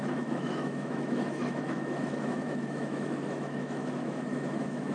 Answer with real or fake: fake